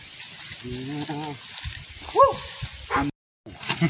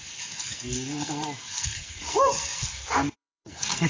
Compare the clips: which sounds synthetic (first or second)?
second